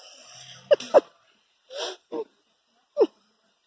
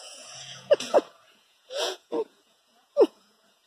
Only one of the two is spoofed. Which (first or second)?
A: second